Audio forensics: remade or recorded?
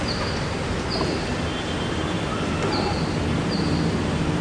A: remade